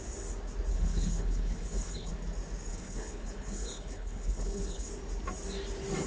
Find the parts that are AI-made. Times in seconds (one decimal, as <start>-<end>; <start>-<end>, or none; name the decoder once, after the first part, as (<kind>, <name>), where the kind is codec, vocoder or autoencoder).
0.7-2.1 (codec, HILCodec); 2.7-4.9